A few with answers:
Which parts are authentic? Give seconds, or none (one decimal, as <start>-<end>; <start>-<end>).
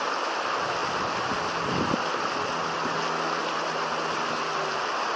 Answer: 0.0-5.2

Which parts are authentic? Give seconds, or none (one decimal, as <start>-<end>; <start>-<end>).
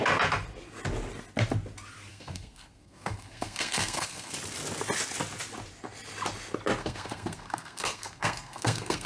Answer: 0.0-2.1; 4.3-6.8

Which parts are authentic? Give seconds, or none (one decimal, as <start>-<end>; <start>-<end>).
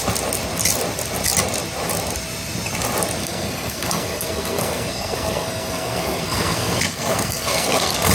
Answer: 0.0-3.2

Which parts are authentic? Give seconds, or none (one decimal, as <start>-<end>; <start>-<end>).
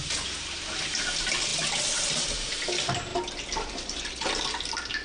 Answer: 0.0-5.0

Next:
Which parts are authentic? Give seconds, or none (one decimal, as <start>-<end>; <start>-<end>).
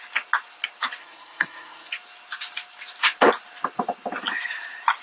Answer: 0.0-1.0; 1.9-5.0